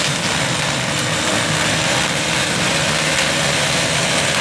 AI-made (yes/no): no